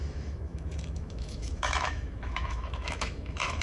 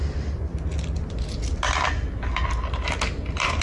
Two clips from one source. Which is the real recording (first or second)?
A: second